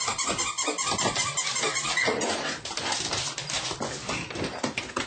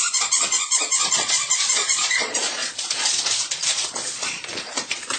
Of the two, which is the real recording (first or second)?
first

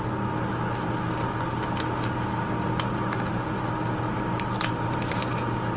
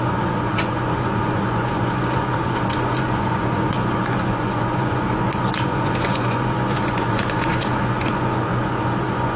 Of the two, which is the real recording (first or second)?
first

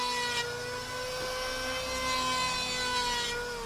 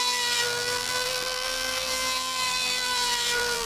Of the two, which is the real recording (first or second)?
first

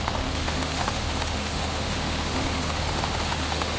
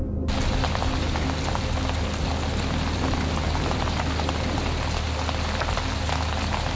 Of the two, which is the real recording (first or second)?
second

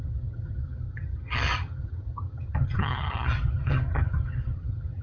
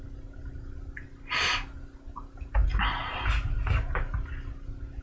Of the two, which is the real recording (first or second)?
second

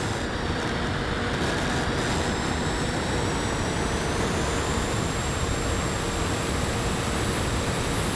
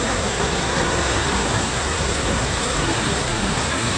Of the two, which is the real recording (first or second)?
first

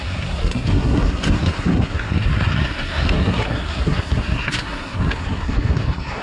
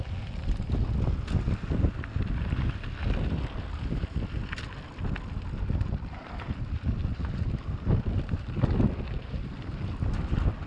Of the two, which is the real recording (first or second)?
second